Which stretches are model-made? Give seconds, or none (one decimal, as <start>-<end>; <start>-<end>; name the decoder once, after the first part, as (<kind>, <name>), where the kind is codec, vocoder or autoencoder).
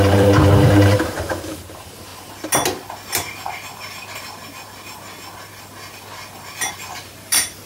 0.0-2.1 (vocoder, BigVGAN v2); 6.7-7.7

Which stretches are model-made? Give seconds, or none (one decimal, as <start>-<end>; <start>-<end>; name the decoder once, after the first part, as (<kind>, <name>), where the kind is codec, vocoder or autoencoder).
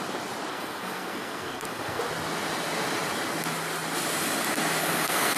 0.5-2.0 (codec, SNAC); 4.8-5.4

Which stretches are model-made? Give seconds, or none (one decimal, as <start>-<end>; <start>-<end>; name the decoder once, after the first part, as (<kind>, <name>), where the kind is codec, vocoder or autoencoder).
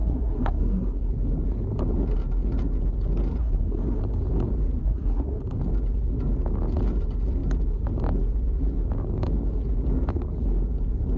0.0-1.1 (codec, SNAC); 3.4-4.0; 4.8-5.4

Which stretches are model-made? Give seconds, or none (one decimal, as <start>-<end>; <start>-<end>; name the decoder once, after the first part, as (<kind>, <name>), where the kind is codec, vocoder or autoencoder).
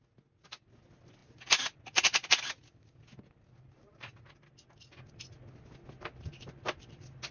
none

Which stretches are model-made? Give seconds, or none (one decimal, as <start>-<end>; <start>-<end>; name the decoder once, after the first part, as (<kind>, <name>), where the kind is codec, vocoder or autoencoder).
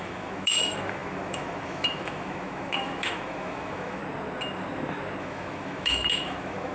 0.0-4.0 (autoencoder, DAC-VAE); 5.2-6.7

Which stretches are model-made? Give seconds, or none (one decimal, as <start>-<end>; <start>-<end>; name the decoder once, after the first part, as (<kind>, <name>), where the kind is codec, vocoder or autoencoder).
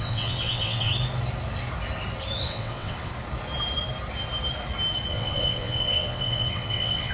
0.0-0.9 (vocoder, WaveNeXt); 2.4-3.1; 5.1-7.1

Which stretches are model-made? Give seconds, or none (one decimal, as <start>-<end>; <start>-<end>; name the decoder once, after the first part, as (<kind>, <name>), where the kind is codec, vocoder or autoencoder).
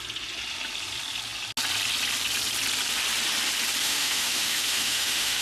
3.8-5.4 (autoencoder, DAC-VAE)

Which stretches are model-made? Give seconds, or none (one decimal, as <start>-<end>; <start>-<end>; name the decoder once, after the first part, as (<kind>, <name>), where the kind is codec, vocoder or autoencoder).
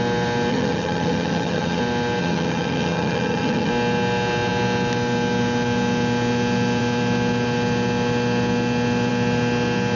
0.5-1.8 (vocoder, HiFi-GAN); 2.2-3.7